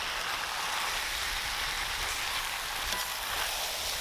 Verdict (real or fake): real